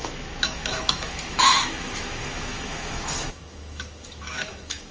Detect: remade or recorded remade